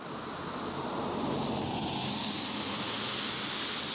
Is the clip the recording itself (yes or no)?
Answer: yes